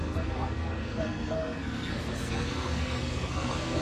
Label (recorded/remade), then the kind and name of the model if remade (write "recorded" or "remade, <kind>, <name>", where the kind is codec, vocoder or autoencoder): remade, codec, SNAC